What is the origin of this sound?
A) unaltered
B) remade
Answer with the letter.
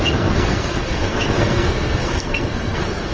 B